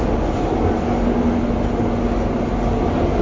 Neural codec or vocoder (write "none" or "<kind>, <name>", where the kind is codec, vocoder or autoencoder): none